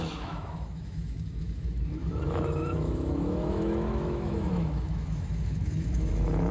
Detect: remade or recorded remade